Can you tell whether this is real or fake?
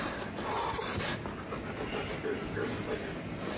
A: real